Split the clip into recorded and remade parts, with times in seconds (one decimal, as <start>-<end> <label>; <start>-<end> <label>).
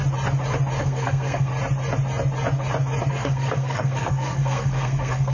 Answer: 0.0-0.8 recorded; 0.8-1.5 remade; 1.5-3.1 recorded; 3.1-5.3 remade